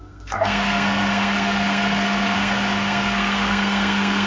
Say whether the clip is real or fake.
fake